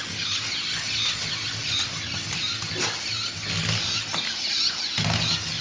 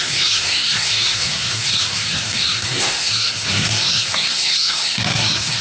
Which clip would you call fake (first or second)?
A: second